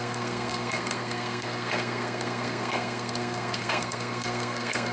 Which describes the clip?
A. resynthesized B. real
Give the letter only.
A